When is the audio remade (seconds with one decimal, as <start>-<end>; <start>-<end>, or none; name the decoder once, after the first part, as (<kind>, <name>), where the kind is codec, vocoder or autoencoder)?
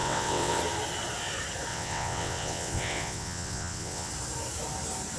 0.0-0.6 (vocoder, WaveNeXt); 1.7-4.1